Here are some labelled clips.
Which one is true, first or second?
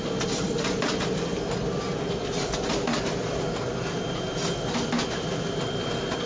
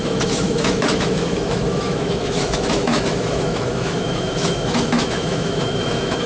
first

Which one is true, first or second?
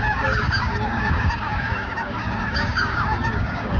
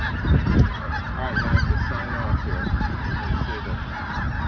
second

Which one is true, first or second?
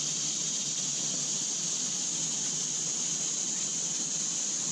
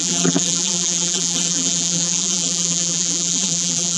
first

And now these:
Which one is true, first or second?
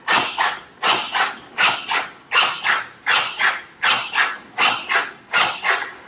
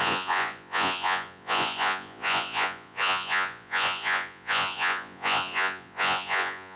first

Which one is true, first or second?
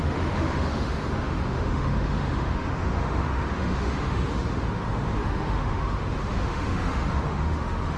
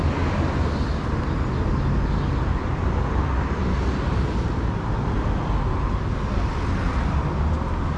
second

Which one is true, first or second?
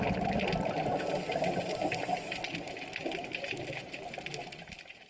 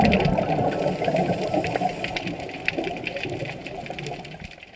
first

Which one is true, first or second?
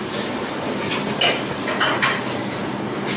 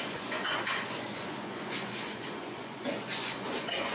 first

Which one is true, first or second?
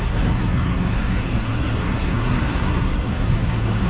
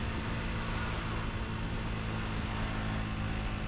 second